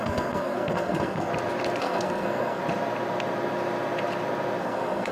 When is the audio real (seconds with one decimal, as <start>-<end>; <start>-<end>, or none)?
1.3-1.8; 2.6-4.6